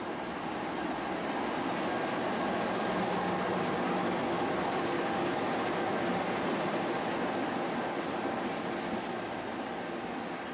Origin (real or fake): real